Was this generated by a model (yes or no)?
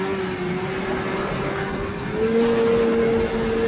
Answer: no